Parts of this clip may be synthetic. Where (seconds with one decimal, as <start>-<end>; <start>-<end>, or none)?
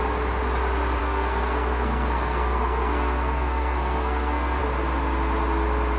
1.0-4.6